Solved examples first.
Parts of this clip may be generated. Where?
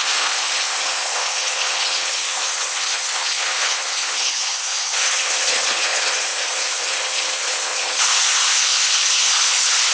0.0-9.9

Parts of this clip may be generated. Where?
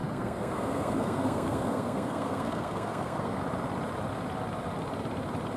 0.0-3.4